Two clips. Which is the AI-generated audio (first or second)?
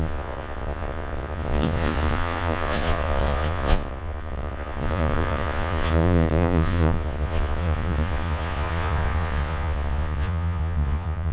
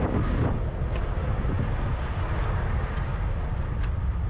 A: first